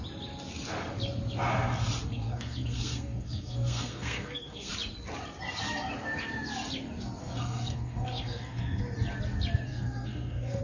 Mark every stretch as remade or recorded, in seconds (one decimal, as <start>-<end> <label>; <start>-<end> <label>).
0.0-2.1 recorded; 2.1-4.7 remade; 4.7-7.2 recorded; 7.2-8.8 remade; 8.8-9.7 recorded; 9.7-10.6 remade